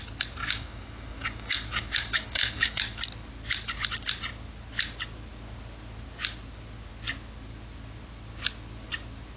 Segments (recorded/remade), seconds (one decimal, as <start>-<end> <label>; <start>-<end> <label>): 0.0-0.4 recorded; 0.4-2.8 remade; 2.8-9.4 recorded